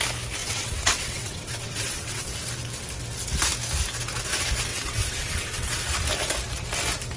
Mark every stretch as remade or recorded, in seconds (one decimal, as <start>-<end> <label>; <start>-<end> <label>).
0.0-0.4 recorded; 0.4-2.3 remade; 2.3-4.7 recorded; 4.7-5.8 remade; 5.8-7.2 recorded